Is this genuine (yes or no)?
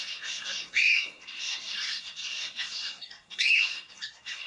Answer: no